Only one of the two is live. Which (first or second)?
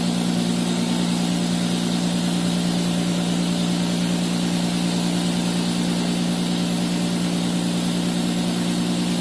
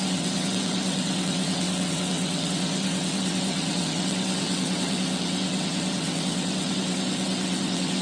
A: first